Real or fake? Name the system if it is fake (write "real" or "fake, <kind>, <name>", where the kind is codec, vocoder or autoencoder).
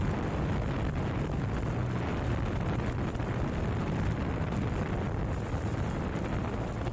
real